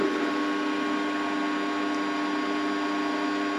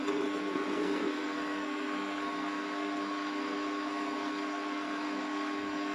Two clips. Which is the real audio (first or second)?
first